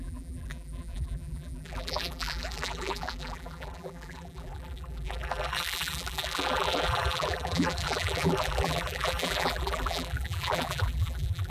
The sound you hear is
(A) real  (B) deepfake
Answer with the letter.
B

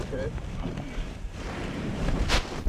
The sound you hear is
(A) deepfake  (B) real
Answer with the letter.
A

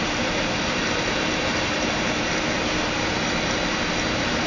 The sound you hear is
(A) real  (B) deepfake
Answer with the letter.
B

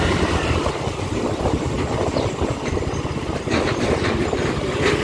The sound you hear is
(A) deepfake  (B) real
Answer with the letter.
B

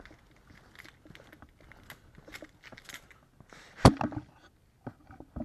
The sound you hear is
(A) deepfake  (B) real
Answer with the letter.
B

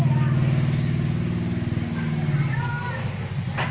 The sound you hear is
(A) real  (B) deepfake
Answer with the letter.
A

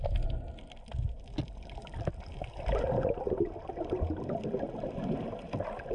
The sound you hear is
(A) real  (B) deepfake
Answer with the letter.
A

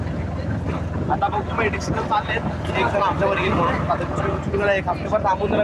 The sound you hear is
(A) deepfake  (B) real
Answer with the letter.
B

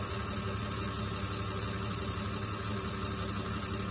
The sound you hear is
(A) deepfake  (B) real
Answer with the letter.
B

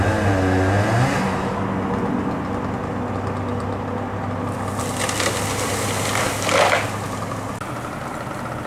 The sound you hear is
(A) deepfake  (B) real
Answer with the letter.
B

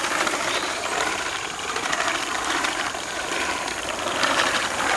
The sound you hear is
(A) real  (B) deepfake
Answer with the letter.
B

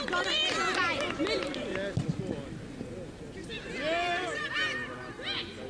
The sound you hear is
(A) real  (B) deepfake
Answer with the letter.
A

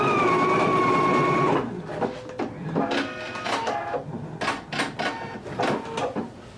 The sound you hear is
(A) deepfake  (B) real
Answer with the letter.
B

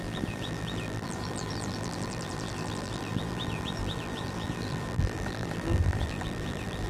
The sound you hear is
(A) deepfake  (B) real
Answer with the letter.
A